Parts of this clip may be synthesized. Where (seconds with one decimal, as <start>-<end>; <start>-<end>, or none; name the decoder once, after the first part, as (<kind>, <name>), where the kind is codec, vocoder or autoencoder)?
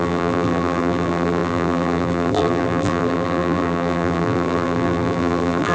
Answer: 0.0-5.7 (vocoder, BigVGAN v2)